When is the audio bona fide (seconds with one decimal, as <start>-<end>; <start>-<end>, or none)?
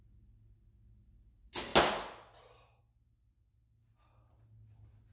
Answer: 0.0-5.1